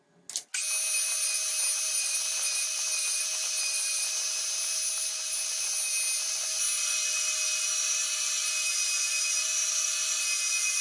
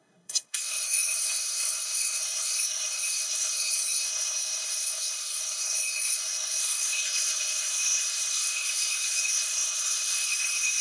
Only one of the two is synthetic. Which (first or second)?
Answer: second